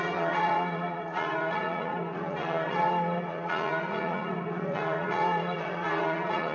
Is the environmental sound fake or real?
fake